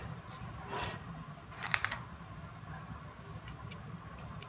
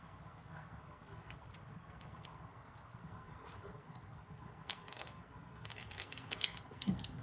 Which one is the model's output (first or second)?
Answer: second